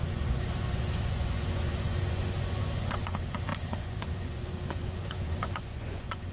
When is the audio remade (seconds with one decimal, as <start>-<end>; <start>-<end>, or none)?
0.0-6.3